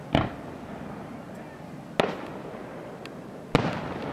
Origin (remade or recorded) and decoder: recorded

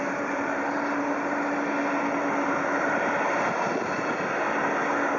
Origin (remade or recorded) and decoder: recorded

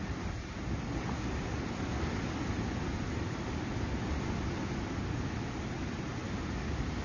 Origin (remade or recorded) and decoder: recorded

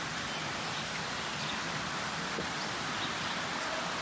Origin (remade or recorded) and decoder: recorded